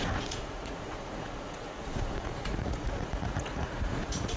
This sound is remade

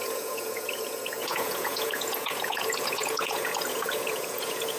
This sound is remade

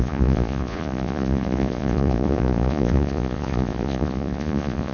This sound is remade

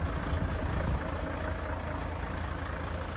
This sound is recorded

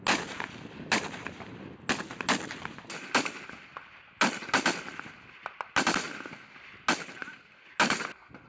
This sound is recorded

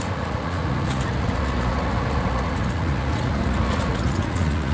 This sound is remade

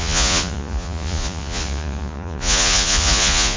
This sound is remade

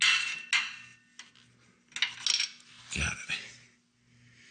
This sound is recorded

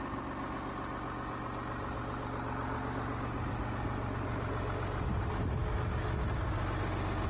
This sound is recorded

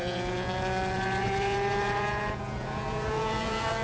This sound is remade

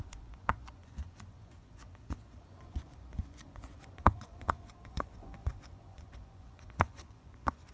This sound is remade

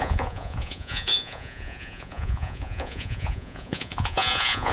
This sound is remade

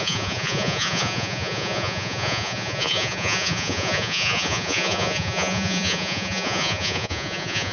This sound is remade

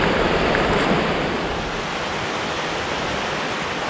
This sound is recorded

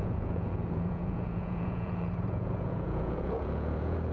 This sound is remade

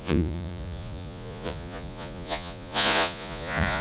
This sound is remade